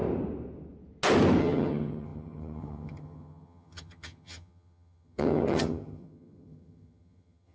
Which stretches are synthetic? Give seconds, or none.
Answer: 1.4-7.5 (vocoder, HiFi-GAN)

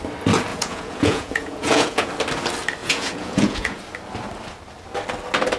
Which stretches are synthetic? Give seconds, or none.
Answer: 0.5-2.1 (vocoder, Vocos); 2.8-3.8